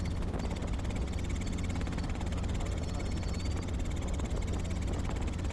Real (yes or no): no